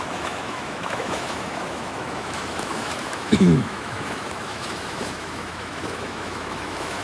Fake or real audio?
fake